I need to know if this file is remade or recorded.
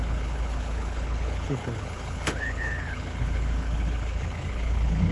remade